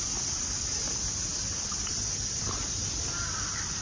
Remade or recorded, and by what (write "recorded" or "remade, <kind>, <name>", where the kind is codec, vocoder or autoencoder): recorded